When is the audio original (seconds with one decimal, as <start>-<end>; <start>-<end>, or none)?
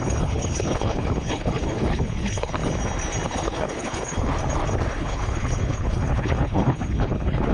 2.6-3.3; 4.3-4.9